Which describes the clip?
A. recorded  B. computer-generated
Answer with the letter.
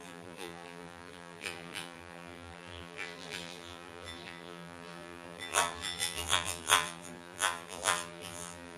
B